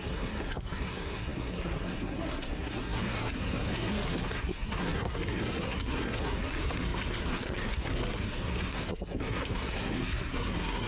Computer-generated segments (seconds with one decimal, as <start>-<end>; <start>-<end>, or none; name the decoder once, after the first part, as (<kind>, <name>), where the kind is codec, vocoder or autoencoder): 0.0-10.9 (codec, SNAC)